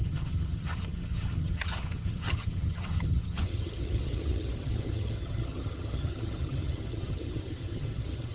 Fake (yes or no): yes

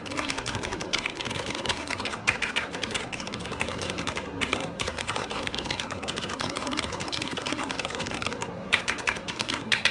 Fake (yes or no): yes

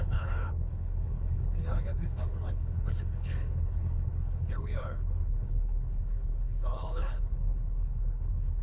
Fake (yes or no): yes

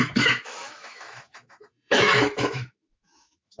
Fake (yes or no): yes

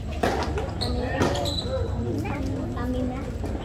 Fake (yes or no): no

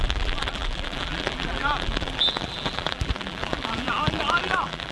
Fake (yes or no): yes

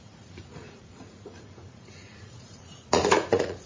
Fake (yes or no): yes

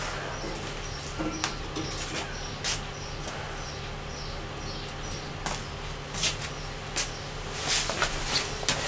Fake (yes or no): no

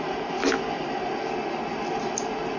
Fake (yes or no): no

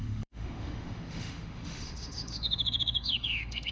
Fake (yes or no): yes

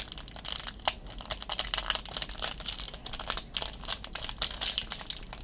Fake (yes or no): no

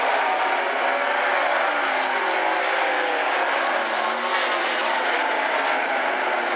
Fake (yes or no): no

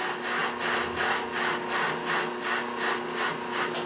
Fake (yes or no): no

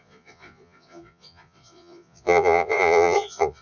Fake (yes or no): yes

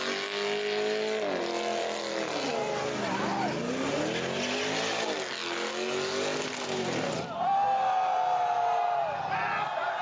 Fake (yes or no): no